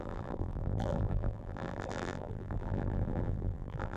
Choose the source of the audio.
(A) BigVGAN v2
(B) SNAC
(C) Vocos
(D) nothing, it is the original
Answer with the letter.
A